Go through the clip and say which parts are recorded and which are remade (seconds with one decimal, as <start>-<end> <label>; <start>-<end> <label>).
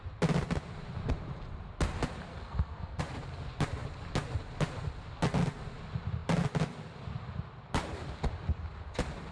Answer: 0.0-2.3 recorded; 2.3-3.0 remade; 3.0-9.3 recorded